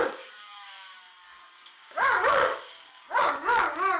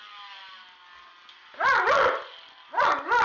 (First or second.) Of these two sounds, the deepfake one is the first